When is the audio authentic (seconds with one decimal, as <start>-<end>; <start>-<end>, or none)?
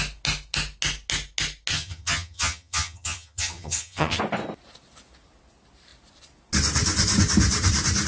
0.0-1.7; 4.2-8.1